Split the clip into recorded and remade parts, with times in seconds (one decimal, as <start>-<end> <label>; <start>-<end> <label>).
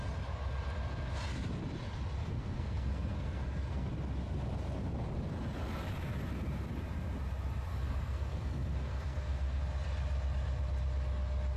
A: 0.0-2.2 recorded; 2.2-3.9 remade; 3.9-7.7 recorded; 7.7-9.6 remade; 9.6-11.6 recorded